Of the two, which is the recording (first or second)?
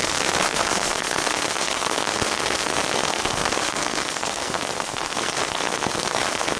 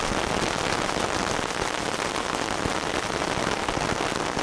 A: second